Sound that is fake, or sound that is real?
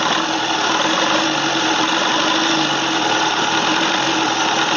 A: real